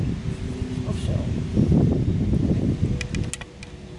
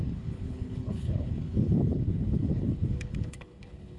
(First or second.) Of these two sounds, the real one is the first